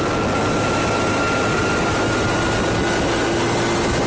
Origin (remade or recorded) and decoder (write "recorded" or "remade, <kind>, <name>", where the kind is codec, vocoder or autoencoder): recorded